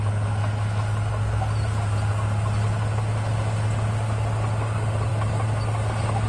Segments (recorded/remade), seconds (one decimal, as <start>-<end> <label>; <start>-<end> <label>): 0.0-6.3 recorded